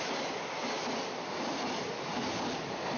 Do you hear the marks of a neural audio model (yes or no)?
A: no